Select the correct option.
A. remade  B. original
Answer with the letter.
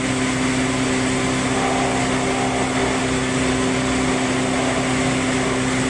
B